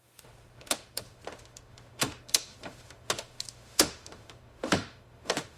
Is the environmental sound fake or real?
fake